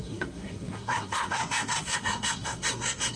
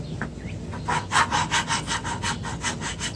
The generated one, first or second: first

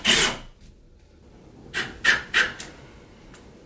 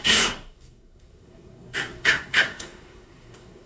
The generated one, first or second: second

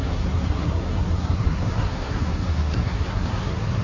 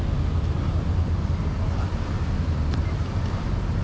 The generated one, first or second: first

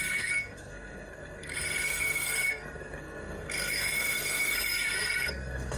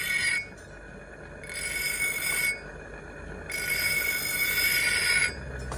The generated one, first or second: first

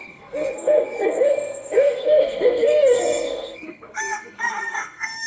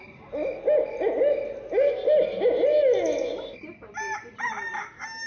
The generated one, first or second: first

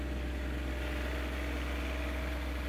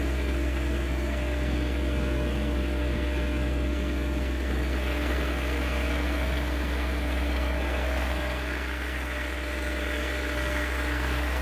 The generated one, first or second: second